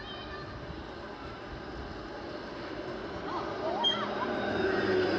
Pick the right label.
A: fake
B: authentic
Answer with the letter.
B